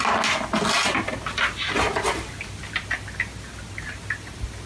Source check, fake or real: real